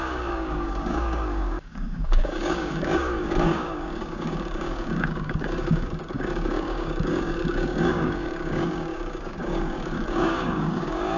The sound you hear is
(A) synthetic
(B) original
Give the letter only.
A